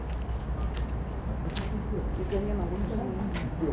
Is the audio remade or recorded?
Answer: recorded